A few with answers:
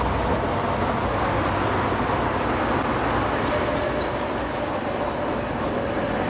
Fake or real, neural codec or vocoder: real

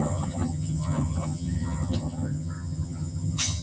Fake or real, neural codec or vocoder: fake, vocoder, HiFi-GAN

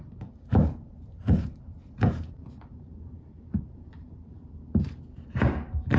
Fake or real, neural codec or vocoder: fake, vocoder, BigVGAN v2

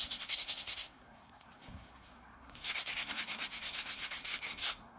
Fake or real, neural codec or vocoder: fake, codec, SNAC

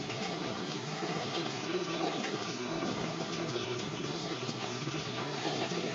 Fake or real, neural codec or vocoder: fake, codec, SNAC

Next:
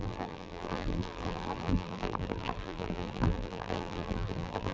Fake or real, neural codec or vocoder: fake, vocoder, BigVGAN v2